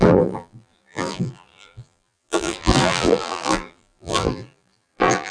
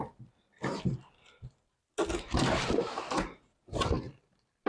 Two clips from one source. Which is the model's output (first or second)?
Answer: first